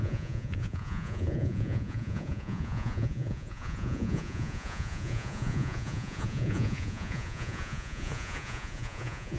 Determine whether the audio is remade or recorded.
remade